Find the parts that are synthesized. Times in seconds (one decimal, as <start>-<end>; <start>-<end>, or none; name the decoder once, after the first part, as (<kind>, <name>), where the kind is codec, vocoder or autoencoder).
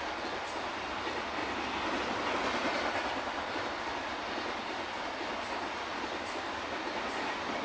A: none